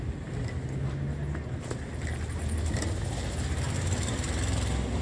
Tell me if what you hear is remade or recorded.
recorded